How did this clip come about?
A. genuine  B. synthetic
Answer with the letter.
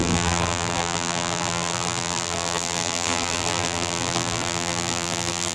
B